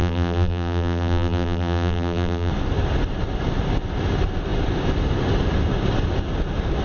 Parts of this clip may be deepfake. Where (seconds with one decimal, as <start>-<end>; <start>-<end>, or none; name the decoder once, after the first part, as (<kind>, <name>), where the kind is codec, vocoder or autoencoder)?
0.0-2.5 (vocoder, BigVGAN v2)